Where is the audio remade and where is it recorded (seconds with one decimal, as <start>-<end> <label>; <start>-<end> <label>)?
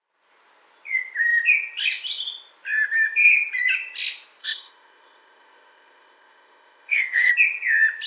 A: 0.0-4.4 recorded; 4.4-7.3 remade; 7.3-8.1 recorded